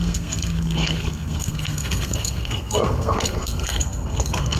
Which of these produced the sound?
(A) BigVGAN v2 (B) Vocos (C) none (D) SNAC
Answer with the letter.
D